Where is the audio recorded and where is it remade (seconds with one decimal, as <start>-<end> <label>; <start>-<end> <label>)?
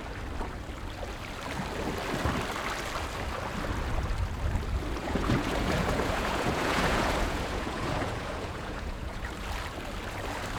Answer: 0.0-5.0 recorded; 5.0-9.3 remade; 9.3-10.6 recorded